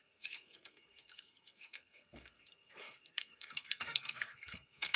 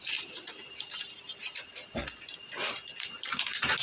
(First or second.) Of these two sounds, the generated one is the first